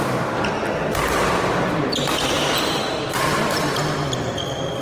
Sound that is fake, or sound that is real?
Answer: real